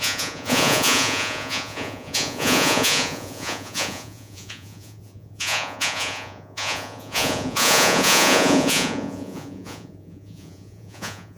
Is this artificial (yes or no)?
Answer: yes